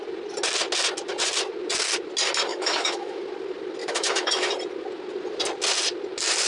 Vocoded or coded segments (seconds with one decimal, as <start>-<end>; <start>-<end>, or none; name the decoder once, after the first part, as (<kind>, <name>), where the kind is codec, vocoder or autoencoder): 2.5-3.2 (autoencoder, DAC-VAE); 3.8-4.5